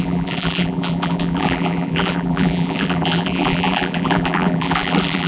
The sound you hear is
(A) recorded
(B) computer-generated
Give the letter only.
B